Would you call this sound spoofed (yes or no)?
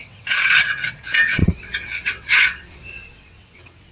yes